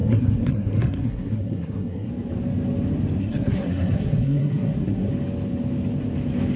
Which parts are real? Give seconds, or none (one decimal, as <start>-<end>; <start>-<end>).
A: 2.1-3.2; 5.1-6.6